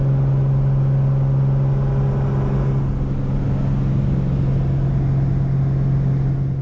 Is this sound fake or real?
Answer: real